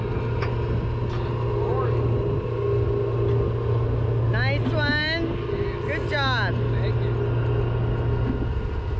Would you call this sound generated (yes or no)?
no